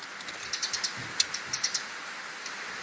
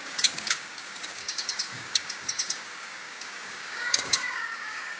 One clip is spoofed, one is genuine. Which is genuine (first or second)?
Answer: first